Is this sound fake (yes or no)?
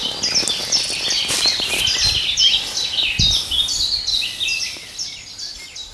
no